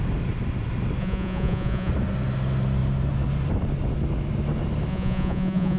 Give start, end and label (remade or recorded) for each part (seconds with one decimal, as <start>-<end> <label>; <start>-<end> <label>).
0.0-1.0 recorded; 1.0-1.9 remade; 1.9-4.9 recorded; 4.9-5.8 remade

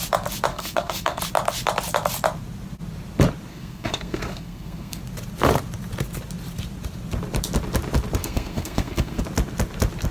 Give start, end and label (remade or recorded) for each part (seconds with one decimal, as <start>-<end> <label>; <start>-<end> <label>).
0.0-0.5 recorded; 0.5-1.2 remade; 1.2-3.5 recorded; 3.5-5.0 remade; 5.0-8.2 recorded; 8.2-9.2 remade; 9.2-10.1 recorded

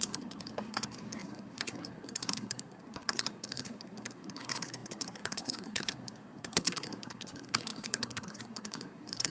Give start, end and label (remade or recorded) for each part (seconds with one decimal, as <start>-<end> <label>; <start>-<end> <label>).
0.0-9.3 remade

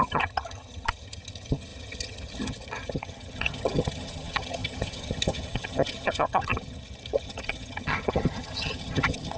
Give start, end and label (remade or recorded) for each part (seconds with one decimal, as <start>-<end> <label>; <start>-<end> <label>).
0.0-9.4 remade

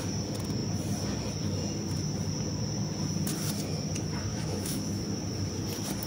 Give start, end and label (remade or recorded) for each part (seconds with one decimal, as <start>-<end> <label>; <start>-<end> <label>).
0.0-4.3 recorded; 4.3-5.0 remade; 5.0-6.1 recorded

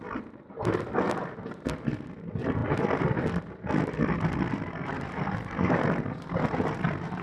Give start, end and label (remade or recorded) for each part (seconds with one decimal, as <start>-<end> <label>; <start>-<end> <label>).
0.0-7.2 recorded

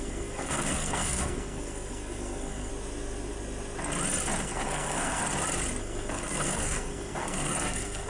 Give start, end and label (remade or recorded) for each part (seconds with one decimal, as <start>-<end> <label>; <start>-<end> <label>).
0.0-2.7 remade; 2.7-4.4 recorded; 4.4-5.2 remade; 5.2-5.8 recorded; 5.8-8.1 remade

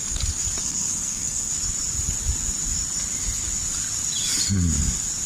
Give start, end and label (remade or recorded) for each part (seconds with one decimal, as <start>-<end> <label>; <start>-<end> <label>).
0.0-0.6 recorded; 0.6-1.5 remade; 1.5-5.3 recorded